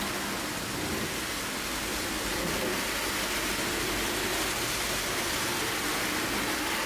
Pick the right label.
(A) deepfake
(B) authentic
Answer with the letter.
B